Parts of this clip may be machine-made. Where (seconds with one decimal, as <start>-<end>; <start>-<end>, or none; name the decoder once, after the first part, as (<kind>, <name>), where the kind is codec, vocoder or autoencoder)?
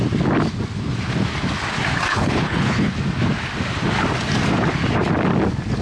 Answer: 2.1-3.0 (codec, HILCodec)